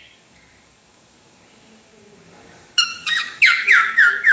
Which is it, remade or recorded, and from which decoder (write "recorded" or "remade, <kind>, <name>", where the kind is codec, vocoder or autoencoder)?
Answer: remade, codec, DAC